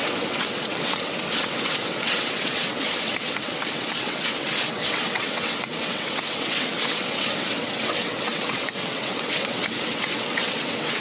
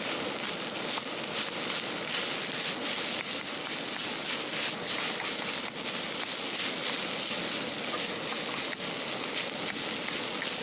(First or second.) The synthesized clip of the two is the first